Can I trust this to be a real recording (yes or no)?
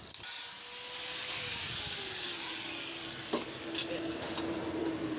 yes